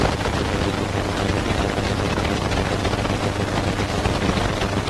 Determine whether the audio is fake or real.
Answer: real